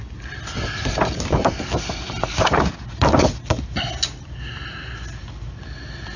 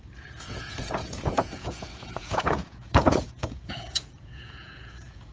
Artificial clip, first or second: second